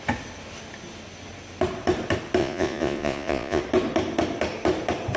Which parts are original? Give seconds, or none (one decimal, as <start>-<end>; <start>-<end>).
0.0-2.4; 3.6-5.2